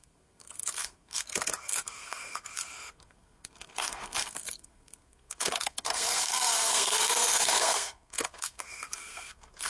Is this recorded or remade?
remade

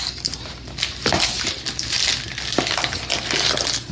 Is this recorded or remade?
recorded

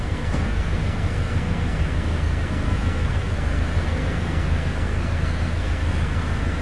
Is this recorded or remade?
remade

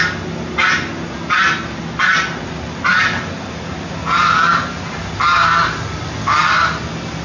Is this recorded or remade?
recorded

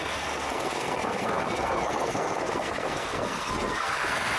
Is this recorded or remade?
remade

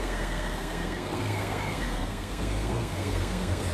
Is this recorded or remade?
remade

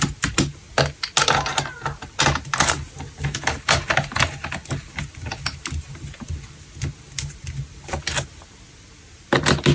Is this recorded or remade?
recorded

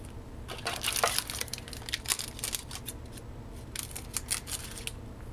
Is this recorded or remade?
recorded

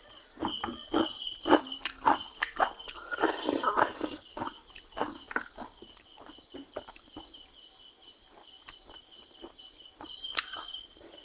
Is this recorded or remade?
recorded